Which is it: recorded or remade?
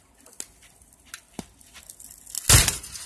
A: recorded